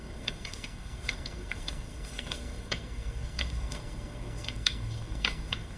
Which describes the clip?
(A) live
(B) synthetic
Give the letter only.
B